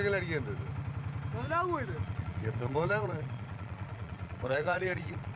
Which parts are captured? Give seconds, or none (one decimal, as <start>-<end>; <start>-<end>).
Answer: 0.0-2.0